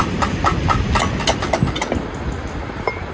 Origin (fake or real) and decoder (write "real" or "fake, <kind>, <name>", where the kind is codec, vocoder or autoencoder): real